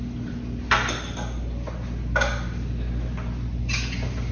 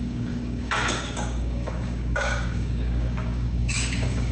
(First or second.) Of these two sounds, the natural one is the first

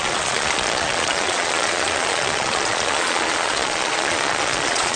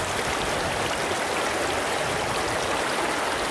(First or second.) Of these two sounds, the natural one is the second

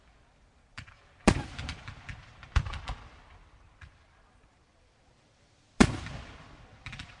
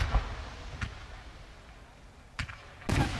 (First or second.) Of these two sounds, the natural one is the second